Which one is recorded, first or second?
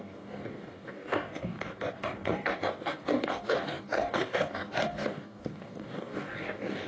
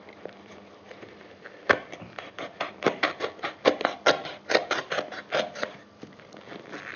second